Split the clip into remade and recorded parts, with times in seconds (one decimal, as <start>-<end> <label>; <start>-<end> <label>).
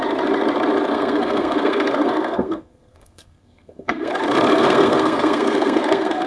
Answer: 0.0-0.9 recorded; 0.9-4.1 remade; 4.1-4.5 recorded; 4.5-6.3 remade